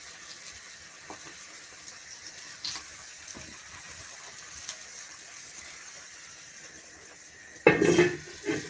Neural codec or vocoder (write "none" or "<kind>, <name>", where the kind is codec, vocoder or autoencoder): none